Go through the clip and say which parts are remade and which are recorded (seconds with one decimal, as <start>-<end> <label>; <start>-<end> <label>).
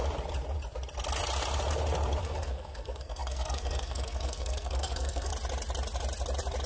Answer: 0.0-2.2 recorded; 2.2-5.3 remade; 5.3-6.7 recorded